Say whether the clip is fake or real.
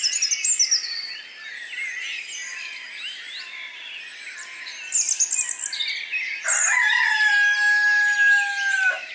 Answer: real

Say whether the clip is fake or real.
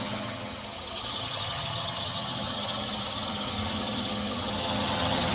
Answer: fake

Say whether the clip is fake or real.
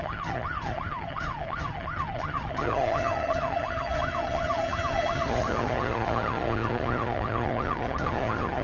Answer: fake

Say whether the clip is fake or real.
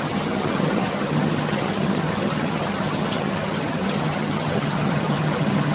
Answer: fake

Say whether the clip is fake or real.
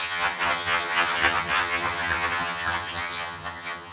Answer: fake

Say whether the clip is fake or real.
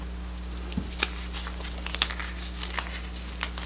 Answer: real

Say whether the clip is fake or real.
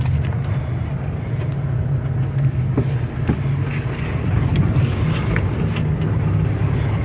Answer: real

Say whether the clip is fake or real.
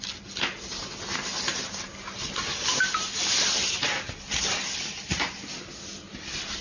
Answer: real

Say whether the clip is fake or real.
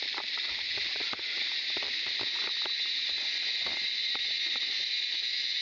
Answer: real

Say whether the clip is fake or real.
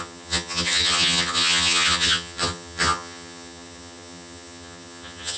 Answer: fake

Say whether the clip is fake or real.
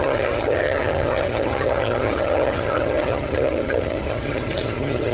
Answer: fake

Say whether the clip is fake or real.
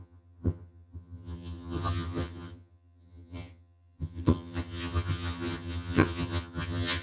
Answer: fake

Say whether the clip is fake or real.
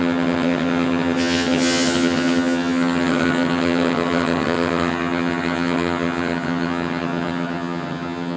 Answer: fake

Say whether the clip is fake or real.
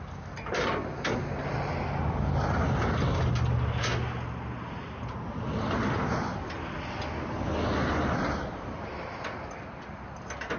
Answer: real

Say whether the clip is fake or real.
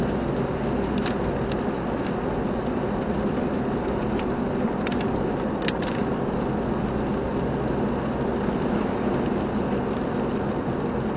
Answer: real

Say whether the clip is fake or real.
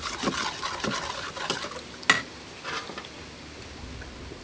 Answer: real